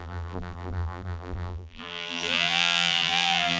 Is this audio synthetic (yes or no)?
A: yes